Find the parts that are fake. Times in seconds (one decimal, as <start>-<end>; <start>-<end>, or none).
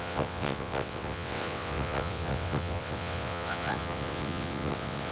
0.0-5.1